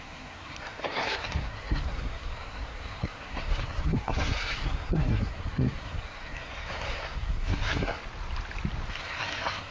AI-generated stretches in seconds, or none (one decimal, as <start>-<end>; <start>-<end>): 0.0-8.0; 8.9-9.7